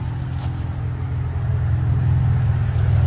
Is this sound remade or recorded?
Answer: recorded